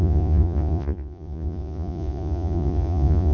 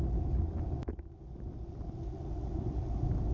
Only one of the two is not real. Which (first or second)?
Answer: first